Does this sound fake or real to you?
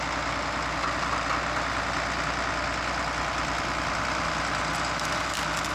real